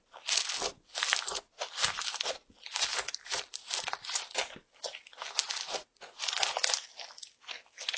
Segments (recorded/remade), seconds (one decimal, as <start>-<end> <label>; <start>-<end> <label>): 0.0-2.9 recorded; 2.9-3.7 remade; 3.7-5.7 recorded; 5.7-6.7 remade; 6.7-8.0 recorded